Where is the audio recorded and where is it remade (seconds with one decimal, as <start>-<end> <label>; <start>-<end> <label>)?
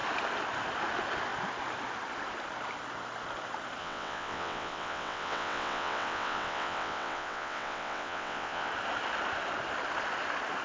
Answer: 0.0-3.8 recorded; 3.8-8.7 remade; 8.7-10.6 recorded